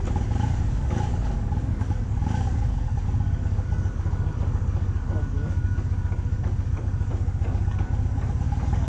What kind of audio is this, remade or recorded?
remade